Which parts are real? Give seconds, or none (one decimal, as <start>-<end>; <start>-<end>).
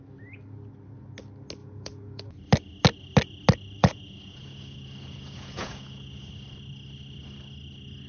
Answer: 0.0-1.6; 2.2-3.8; 6.3-8.1